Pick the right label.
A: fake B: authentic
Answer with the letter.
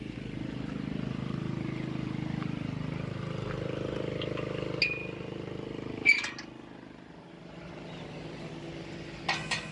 B